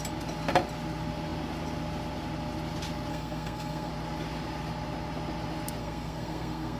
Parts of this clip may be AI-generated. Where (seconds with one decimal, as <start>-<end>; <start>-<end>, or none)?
3.1-3.9; 5.8-6.8